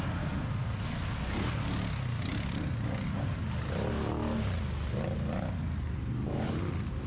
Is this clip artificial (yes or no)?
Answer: no